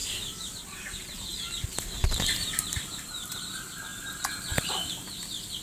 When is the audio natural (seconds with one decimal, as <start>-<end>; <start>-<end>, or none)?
3.3-3.9; 4.9-5.6